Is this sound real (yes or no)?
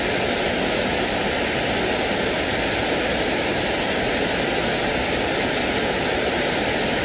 yes